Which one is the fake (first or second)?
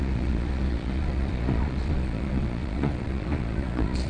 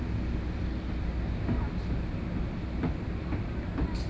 first